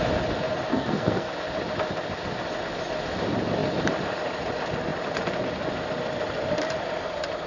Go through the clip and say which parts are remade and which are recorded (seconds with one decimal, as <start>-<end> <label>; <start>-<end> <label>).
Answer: 0.0-0.7 recorded; 0.7-1.3 remade; 1.3-7.5 recorded